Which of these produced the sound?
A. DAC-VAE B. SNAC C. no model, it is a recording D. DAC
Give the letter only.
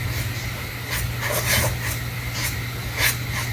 C